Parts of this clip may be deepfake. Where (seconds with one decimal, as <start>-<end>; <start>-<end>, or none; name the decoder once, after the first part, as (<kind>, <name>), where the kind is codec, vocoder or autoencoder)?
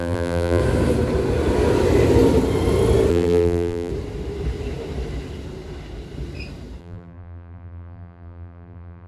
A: 0.0-0.6 (vocoder, BigVGAN v2); 3.1-3.9; 6.8-9.1